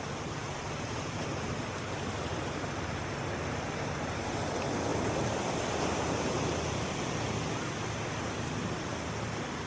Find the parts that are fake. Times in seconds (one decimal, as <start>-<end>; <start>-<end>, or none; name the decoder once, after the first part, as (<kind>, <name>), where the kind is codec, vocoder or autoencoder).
none